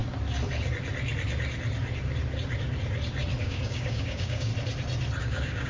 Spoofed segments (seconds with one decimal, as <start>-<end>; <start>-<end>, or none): 3.4-4.5; 5.2-5.7